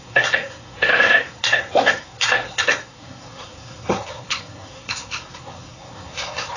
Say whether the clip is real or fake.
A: fake